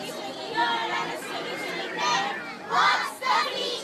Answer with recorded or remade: recorded